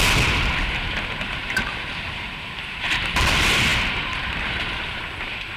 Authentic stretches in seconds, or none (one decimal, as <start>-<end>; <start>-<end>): 0.0-1.4; 2.9-5.6